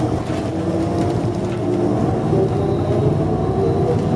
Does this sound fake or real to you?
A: real